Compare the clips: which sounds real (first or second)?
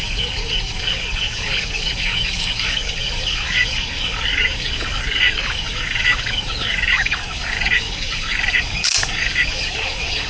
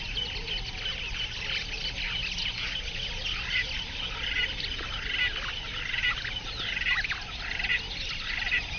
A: second